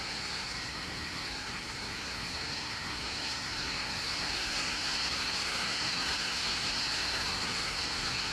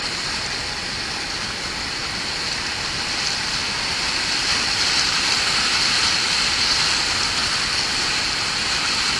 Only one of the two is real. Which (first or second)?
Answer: second